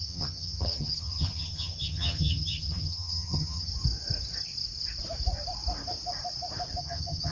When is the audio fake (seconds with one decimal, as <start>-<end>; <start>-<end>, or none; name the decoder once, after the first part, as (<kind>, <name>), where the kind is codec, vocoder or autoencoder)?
0.0-3.7 (vocoder, HiFi-GAN); 6.8-7.3